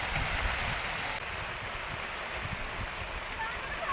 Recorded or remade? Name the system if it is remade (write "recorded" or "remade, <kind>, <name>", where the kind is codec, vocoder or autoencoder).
recorded